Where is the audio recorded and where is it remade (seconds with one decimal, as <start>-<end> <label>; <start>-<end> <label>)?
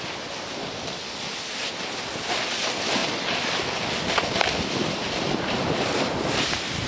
0.0-6.9 recorded